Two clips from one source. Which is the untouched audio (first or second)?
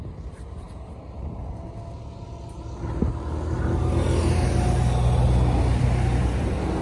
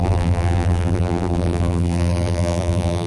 first